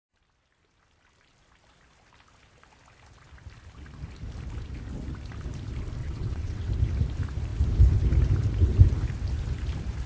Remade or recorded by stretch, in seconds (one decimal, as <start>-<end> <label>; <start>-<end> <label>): 0.0-6.0 recorded; 6.0-6.7 remade; 6.7-10.1 recorded